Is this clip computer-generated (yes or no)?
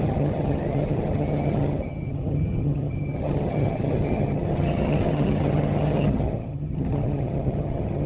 yes